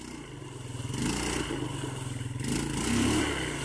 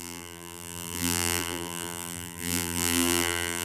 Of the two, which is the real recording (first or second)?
first